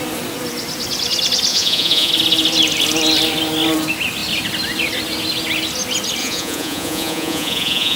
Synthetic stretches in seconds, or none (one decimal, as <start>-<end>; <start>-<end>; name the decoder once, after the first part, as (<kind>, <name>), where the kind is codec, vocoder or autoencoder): 1.5-2.1 (vocoder, Vocos); 6.2-8.0